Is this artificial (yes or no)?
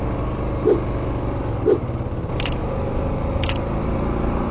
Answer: no